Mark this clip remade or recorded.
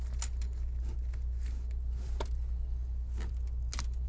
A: recorded